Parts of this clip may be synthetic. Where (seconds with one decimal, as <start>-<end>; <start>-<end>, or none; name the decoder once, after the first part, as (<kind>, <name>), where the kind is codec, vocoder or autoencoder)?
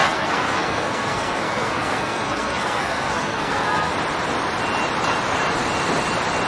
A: 0.0-3.9 (codec, SNAC)